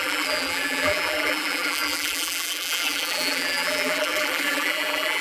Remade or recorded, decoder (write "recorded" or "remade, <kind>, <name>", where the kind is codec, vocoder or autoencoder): remade, vocoder, BigVGAN v2